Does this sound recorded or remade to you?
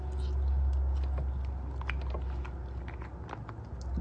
recorded